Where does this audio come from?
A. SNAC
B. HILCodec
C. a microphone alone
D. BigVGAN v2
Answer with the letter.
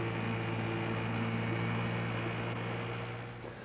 C